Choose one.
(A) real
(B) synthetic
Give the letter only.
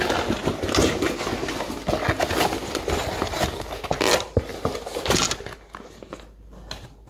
A